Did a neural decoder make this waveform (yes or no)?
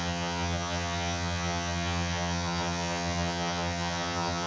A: yes